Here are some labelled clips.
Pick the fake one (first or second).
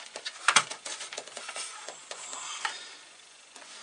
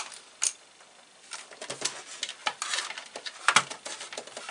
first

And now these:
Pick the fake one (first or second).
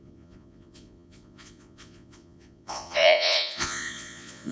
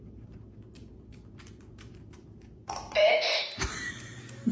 first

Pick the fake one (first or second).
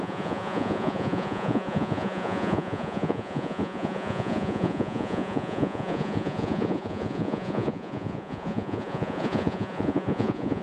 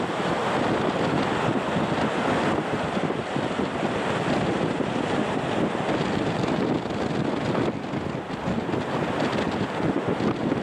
first